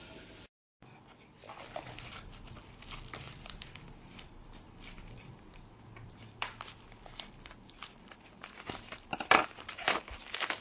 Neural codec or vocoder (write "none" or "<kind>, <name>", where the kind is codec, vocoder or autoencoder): vocoder, BigVGAN v2